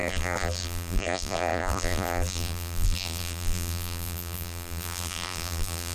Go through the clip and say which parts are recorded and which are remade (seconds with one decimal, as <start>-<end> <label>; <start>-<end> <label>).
0.0-5.9 remade